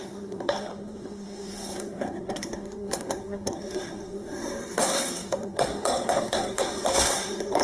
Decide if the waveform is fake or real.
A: fake